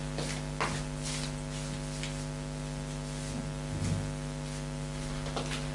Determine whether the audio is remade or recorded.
recorded